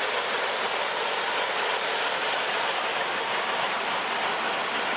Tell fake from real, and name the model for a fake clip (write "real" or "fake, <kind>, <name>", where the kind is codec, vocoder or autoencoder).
real